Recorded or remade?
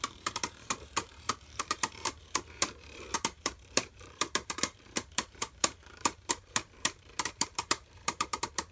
remade